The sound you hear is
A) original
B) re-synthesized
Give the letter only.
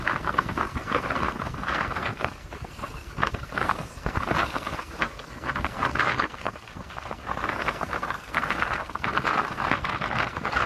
B